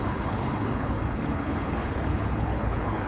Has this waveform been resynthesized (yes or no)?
yes